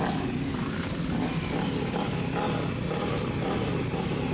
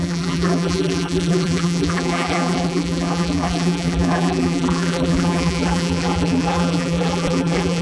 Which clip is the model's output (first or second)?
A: second